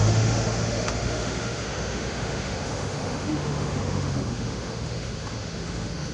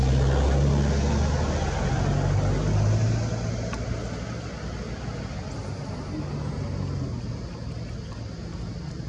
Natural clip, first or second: second